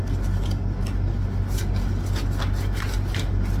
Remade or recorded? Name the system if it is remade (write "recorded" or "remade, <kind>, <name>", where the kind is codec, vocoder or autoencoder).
recorded